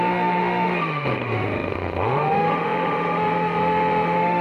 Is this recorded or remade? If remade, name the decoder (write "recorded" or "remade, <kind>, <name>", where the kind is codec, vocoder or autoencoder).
remade, autoencoder, DAC-VAE